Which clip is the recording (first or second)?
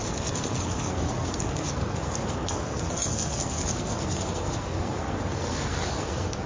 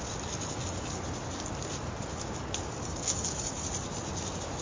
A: second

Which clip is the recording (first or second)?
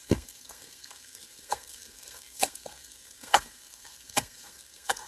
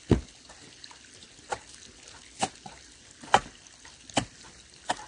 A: second